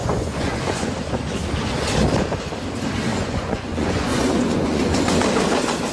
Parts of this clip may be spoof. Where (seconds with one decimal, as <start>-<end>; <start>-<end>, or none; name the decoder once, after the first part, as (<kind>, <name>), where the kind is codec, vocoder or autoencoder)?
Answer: 0.0-0.9 (vocoder, Vocos); 3.1-5.2